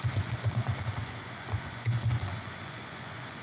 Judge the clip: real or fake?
fake